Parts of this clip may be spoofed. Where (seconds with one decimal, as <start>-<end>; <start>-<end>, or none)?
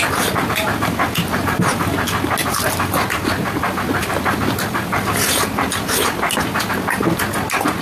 none